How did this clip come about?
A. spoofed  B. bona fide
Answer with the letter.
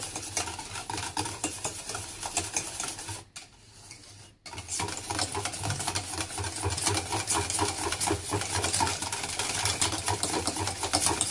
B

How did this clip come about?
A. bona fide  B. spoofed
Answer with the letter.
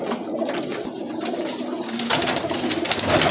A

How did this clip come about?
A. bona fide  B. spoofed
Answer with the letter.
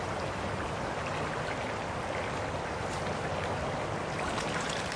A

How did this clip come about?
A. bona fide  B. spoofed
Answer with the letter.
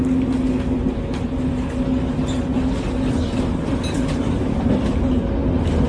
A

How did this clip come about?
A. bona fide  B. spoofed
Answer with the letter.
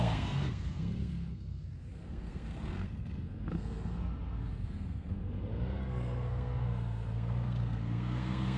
B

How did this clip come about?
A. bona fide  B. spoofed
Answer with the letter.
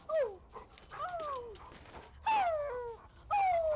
A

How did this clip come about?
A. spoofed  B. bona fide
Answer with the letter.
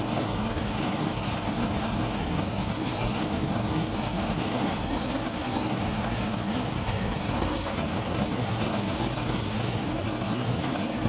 A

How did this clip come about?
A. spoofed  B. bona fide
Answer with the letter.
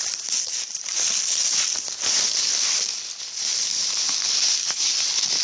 B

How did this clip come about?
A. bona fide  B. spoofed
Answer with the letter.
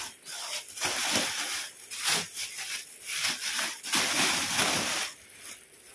A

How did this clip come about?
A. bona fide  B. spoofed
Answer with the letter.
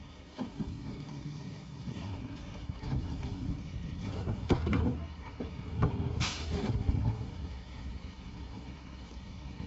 B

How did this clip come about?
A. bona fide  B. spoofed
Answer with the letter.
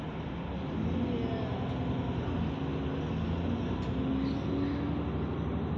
A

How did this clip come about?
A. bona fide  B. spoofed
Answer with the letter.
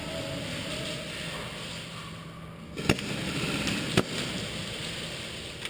A